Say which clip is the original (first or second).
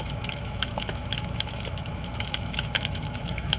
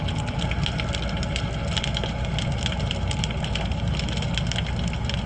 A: second